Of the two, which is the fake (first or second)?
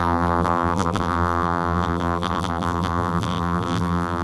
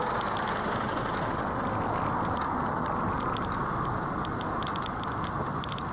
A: first